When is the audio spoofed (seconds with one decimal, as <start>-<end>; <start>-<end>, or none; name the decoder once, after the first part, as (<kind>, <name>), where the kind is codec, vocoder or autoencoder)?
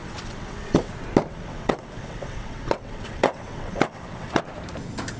0.0-0.9 (vocoder, WaveNeXt); 1.3-4.4